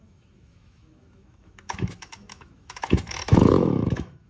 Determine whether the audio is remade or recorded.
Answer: remade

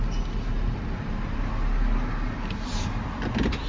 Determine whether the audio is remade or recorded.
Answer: recorded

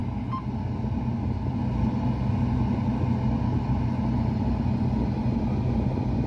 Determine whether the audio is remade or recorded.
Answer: recorded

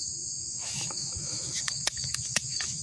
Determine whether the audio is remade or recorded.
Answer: remade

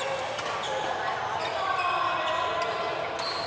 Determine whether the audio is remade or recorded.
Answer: recorded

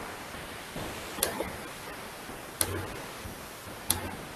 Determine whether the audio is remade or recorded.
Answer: recorded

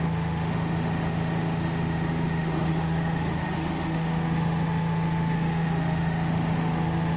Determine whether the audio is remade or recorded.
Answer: remade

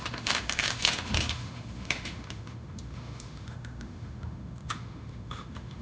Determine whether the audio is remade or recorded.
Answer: remade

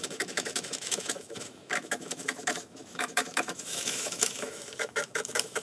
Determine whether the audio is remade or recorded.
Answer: remade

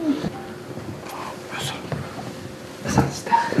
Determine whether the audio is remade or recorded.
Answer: recorded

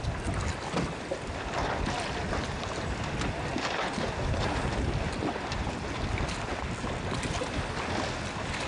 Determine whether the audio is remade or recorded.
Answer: recorded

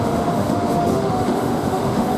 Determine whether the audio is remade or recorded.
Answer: remade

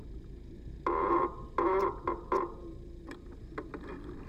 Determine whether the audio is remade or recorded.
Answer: recorded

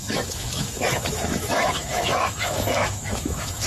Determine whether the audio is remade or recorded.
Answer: remade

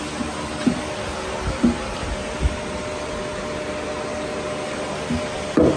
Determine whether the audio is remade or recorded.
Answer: recorded